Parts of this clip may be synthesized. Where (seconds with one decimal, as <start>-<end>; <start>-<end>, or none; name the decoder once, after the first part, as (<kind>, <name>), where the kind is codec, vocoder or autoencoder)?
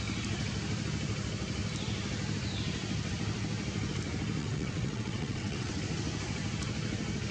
4.4-5.8 (vocoder, WaveNeXt)